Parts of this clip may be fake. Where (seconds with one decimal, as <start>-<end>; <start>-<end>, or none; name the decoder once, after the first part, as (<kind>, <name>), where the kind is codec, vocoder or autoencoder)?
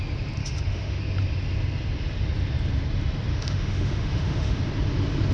0.4-1.0 (autoencoder, DAC-VAE); 3.3-4.6